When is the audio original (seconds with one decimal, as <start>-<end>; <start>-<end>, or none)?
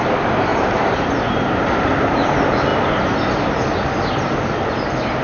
0.0-0.5; 2.3-2.7; 3.5-5.2